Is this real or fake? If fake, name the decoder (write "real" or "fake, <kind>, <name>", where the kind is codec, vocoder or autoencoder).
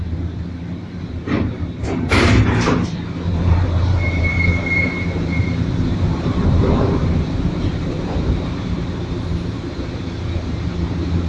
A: fake, vocoder, BigVGAN v2